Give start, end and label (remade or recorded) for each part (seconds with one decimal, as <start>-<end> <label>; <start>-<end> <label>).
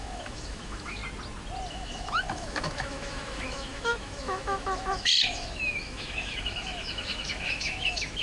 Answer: 0.0-1.0 remade; 1.0-1.7 recorded; 1.7-8.2 remade